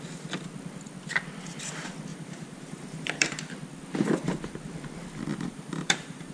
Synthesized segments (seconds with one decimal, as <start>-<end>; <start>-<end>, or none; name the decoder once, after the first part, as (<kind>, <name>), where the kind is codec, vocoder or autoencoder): 2.1-3.3 (vocoder, BigVGAN v2); 5.3-6.3